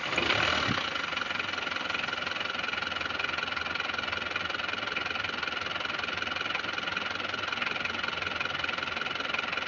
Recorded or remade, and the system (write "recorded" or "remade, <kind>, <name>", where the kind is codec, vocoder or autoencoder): recorded